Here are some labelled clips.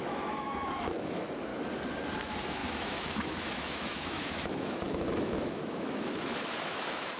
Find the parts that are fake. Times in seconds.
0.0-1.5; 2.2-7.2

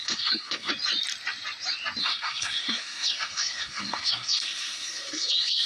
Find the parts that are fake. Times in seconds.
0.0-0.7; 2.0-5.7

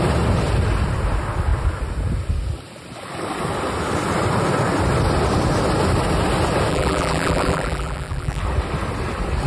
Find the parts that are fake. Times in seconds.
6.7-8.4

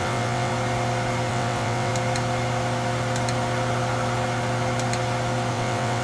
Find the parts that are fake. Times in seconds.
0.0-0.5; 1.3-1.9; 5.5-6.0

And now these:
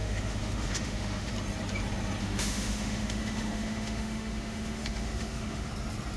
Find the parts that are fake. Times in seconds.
0.0-1.3; 2.2-5.7

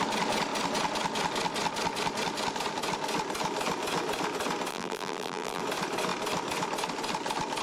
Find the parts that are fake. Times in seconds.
4.7-5.6

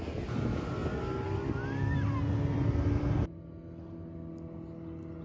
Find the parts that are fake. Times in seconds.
none